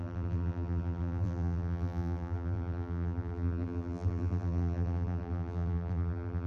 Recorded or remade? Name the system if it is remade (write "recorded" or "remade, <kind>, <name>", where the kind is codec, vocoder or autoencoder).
remade, vocoder, BigVGAN v2